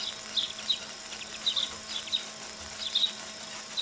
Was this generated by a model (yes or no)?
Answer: no